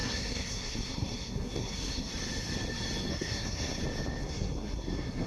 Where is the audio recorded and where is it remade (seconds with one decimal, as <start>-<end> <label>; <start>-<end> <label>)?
0.0-2.1 remade; 2.1-3.1 recorded; 3.1-3.8 remade; 3.8-4.2 recorded; 4.2-5.3 remade